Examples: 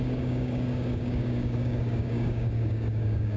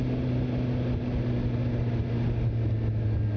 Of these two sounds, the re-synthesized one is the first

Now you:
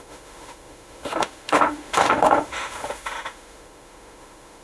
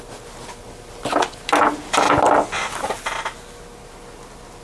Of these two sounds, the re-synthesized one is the first